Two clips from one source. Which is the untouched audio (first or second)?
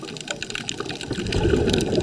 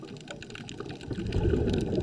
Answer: second